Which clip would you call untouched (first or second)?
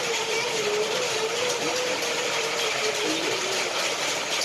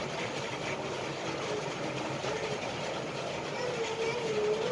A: second